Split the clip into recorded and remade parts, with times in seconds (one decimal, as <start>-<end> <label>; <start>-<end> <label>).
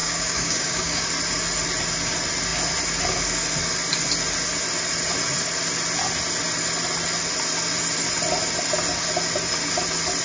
0.0-1.1 remade; 1.1-10.2 recorded